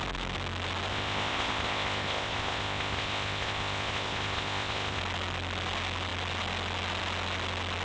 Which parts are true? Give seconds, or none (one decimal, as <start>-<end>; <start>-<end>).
0.0-0.9; 5.0-7.8